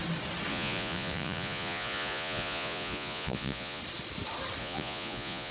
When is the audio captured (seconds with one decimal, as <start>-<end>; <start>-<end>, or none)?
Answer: 0.0-0.5; 3.8-4.6

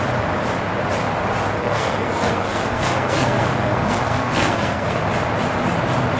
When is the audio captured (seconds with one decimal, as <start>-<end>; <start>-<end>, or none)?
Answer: 0.0-1.6; 5.0-6.2

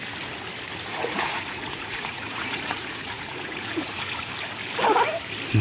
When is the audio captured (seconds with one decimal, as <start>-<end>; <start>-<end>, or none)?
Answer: 0.0-0.9; 4.3-5.6

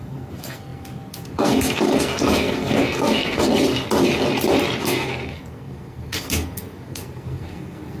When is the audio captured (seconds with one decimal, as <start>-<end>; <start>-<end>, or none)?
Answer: 3.5-4.8

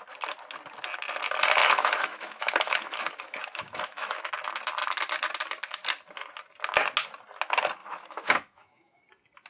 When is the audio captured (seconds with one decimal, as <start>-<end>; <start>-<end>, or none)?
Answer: 0.0-1.6; 4.3-7.8; 9.0-9.5

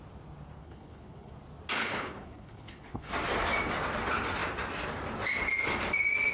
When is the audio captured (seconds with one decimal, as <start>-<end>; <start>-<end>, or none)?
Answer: 0.0-0.6; 1.3-1.8; 3.1-6.3

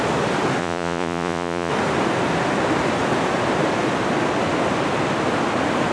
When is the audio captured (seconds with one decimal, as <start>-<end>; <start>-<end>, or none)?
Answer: 0.0-0.6; 1.7-5.9